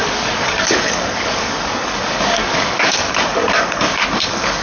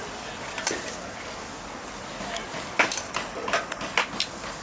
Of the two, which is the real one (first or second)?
second